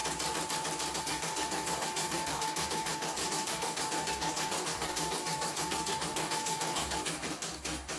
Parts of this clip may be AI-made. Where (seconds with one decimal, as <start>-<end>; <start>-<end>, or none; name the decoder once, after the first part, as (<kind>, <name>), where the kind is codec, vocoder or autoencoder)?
1.0-8.0 (codec, DAC)